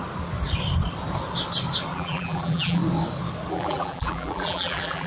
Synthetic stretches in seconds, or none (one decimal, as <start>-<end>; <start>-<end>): 1.9-2.8; 3.5-5.1

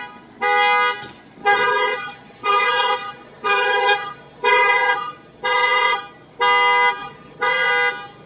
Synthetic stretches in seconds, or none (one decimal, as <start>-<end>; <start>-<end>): 1.4-6.0; 7.0-7.7

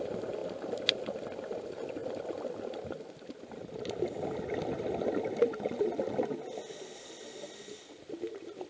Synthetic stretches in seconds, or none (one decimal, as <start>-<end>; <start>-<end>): none

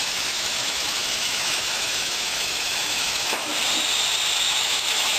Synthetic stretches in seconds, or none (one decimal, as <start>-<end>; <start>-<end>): 0.0-3.5; 4.4-5.2